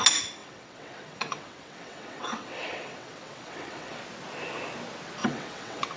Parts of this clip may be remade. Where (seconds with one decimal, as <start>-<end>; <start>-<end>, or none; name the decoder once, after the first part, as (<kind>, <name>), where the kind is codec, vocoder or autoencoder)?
0.4-4.0 (vocoder, WaveNeXt); 5.2-6.0